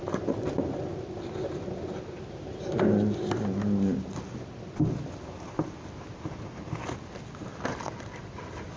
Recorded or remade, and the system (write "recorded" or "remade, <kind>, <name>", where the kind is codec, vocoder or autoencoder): recorded